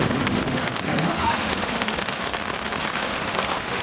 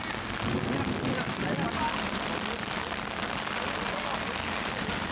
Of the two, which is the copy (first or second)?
first